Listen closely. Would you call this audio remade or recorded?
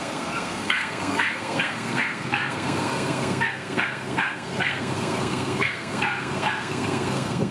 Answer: remade